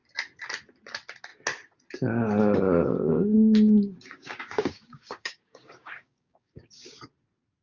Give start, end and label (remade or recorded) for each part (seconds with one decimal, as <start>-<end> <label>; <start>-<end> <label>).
0.0-3.3 recorded; 3.3-7.0 remade; 7.0-7.6 recorded